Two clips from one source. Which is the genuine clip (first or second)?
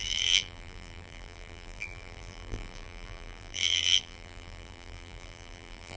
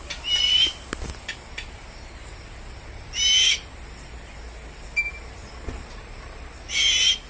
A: second